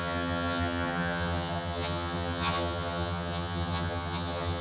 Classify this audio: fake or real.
fake